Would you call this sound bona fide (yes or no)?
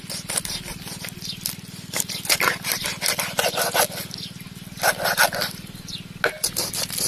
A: yes